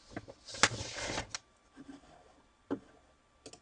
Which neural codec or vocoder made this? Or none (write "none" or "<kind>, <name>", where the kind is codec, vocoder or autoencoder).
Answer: none